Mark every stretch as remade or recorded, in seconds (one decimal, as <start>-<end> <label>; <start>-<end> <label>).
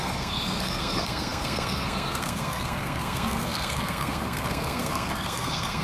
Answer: 0.0-5.8 remade